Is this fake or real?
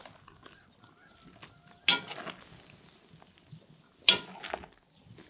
real